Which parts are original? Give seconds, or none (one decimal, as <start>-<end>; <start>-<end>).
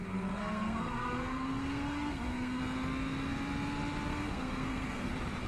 2.6-4.1; 5.1-5.5